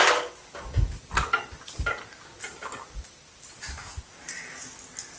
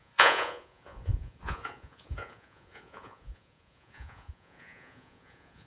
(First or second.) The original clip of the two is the first